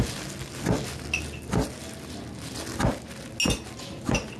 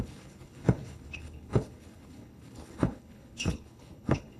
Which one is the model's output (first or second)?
second